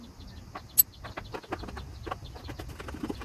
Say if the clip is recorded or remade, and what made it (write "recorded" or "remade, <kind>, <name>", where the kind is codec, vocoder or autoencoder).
recorded